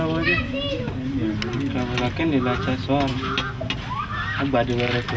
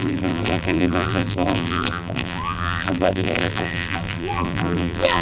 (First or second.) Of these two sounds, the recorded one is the first